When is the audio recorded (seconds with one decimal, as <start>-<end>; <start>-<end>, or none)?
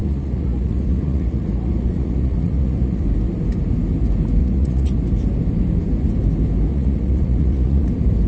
3.0-4.4; 5.0-6.7; 7.9-8.3